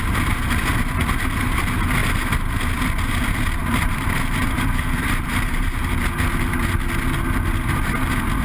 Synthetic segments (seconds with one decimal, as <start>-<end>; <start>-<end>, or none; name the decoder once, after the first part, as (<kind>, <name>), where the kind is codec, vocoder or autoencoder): 3.6-5.7 (vocoder, BigVGAN v2)

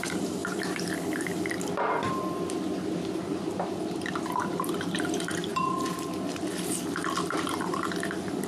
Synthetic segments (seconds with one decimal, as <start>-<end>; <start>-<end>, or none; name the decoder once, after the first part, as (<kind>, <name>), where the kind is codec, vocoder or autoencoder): 0.4-4.1 (vocoder, BigVGAN v2); 5.5-6.9

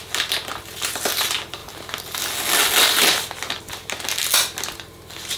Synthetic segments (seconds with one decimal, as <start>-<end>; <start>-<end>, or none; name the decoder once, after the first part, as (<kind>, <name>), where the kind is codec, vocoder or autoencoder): none

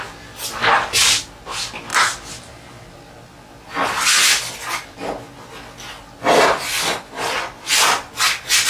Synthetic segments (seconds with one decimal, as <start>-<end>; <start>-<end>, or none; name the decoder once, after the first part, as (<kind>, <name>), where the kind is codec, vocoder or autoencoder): 4.2-5.0 (vocoder, BigVGAN v2)

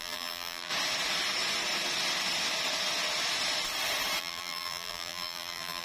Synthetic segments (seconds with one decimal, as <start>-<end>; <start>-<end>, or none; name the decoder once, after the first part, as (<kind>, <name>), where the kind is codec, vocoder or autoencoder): 0.0-0.7 (vocoder, BigVGAN v2); 4.2-5.8

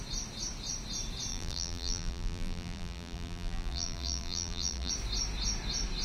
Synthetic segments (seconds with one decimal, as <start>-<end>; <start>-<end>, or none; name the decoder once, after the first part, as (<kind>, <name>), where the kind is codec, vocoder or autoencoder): 1.3-4.9 (vocoder, BigVGAN v2)

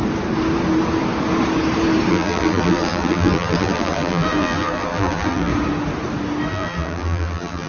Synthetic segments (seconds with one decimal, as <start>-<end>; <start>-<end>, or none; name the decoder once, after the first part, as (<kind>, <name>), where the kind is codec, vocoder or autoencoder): 2.1-5.5 (vocoder, BigVGAN v2); 6.5-7.7

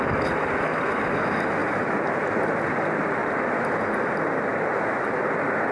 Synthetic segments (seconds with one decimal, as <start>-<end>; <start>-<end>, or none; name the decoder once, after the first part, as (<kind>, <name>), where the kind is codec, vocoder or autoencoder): 1.6-2.5 (vocoder, BigVGAN v2)